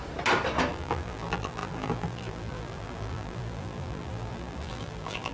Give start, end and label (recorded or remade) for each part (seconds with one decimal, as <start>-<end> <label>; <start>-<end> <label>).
0.0-0.7 recorded; 0.7-5.3 remade